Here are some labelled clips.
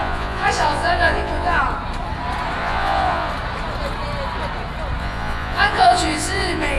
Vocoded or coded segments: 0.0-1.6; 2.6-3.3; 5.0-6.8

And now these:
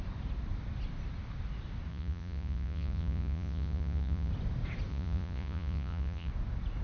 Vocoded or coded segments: 1.9-4.3; 4.9-6.3

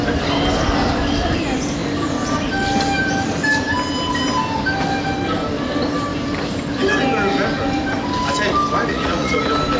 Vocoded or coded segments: 8.8-9.4

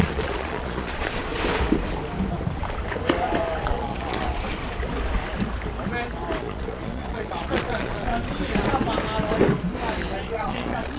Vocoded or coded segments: 0.0-1.3; 3.6-4.6; 6.4-8.1; 10.2-11.0

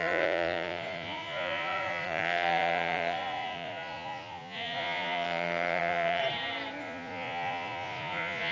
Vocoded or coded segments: 0.0-6.2; 6.8-8.5

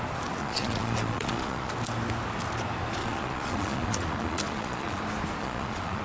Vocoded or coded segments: 0.4-1.7; 3.0-5.0; 5.4-6.0